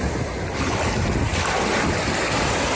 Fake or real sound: real